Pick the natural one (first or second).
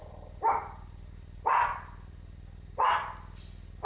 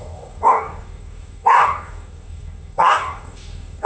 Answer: first